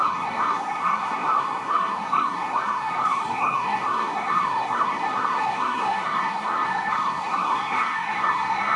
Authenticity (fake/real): fake